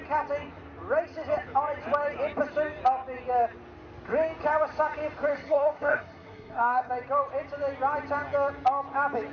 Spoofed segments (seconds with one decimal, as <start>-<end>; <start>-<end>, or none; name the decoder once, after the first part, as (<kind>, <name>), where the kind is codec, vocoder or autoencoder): 5.3-6.9 (codec, SNAC)